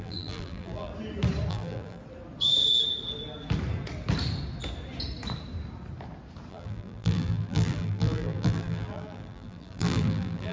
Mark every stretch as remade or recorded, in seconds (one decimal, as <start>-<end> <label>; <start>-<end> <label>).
0.0-0.9 remade; 0.9-1.5 recorded; 1.5-2.0 remade; 2.0-6.5 recorded; 6.5-10.5 remade